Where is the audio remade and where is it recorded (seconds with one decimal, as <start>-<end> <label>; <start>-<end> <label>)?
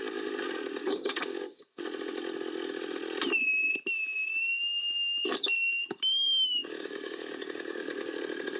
0.0-0.8 recorded; 0.8-1.8 remade; 1.8-4.3 recorded; 4.3-8.2 remade; 8.2-8.6 recorded